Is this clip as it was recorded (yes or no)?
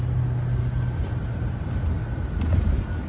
yes